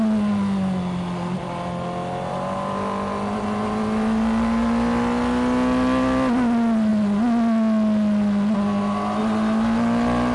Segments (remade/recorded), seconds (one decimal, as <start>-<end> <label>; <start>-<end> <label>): 0.0-10.3 recorded

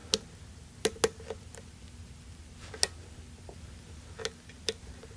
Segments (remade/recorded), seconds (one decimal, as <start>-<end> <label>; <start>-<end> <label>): 0.0-5.2 recorded

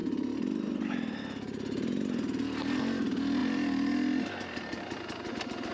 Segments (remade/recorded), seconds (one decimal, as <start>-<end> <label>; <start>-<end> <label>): 0.0-5.7 recorded

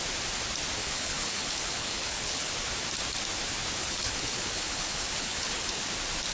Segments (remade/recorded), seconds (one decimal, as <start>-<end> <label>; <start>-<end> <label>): 0.0-0.8 recorded; 0.8-2.5 remade; 2.5-3.8 recorded; 3.8-5.8 remade; 5.8-6.3 recorded

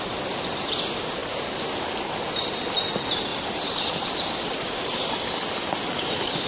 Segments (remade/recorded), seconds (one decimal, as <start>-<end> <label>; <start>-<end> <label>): 0.0-3.3 recorded; 3.3-6.5 remade